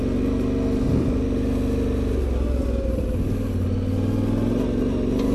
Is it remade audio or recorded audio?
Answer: recorded